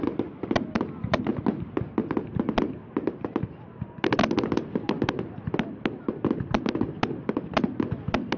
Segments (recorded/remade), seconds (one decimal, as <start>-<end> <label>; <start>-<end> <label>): 0.0-8.4 recorded